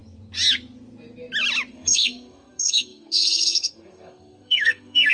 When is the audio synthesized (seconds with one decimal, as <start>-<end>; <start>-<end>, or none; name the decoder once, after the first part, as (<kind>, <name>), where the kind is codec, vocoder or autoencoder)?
1.7-5.1 (codec, SNAC)